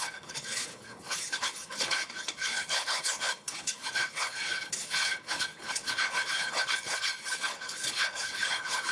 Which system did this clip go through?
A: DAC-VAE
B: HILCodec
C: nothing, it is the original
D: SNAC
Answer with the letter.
B